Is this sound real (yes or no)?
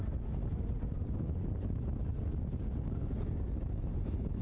yes